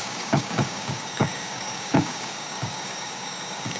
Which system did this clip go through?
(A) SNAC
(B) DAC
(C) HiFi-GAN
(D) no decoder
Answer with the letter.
B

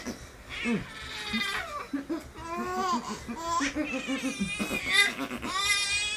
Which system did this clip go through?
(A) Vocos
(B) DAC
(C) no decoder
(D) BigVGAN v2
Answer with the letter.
C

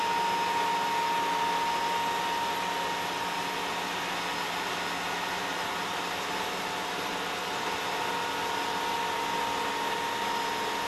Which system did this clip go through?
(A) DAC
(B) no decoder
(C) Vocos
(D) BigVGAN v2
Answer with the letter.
B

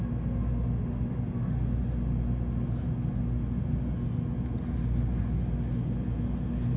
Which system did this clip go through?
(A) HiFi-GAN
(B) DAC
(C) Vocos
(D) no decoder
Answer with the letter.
D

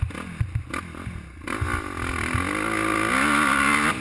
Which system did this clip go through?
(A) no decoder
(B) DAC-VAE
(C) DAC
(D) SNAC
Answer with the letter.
A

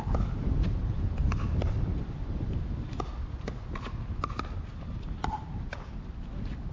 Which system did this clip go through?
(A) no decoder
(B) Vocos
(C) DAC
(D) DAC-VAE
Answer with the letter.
A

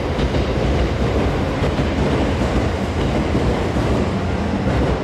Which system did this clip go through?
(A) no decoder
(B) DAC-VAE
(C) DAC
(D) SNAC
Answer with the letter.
A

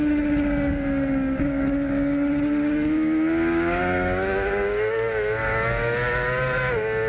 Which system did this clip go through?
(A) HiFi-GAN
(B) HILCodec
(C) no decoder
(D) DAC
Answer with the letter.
D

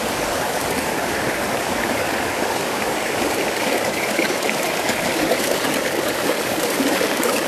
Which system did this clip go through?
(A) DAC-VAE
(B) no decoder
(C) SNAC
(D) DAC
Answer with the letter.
D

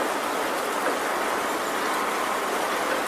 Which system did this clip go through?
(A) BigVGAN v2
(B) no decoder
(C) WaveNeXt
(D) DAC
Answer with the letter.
B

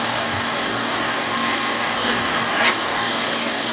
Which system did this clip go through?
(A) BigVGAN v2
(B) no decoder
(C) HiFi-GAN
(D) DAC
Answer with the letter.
D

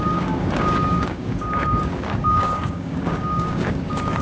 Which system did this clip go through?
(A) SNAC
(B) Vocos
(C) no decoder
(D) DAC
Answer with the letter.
D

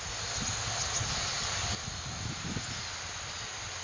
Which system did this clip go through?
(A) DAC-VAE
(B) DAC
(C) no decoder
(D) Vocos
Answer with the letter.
C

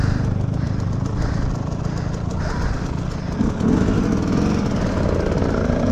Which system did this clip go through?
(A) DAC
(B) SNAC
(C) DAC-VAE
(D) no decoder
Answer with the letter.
D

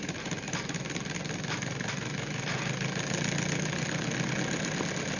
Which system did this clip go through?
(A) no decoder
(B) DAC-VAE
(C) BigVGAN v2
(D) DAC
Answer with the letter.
A